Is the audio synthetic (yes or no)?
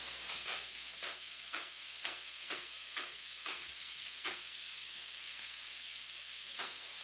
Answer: yes